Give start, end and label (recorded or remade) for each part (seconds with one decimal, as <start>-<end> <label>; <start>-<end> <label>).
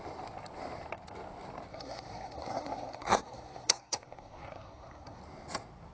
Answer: 0.0-1.7 recorded; 1.7-5.2 remade; 5.2-5.9 recorded